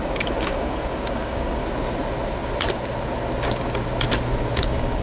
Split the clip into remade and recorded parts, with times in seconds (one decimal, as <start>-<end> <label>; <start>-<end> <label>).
0.0-1.6 remade; 1.6-4.6 recorded; 4.6-5.0 remade